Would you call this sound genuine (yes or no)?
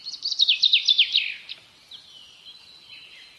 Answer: yes